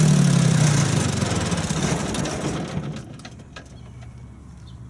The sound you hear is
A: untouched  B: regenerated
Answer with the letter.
A